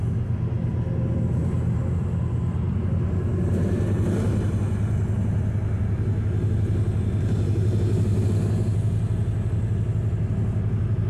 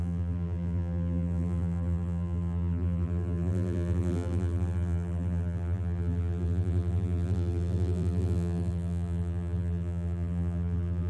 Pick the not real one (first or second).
second